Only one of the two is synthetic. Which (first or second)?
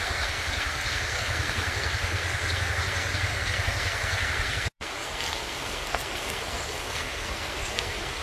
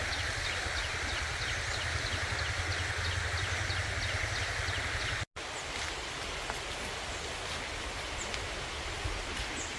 first